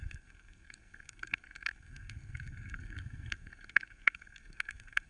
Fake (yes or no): yes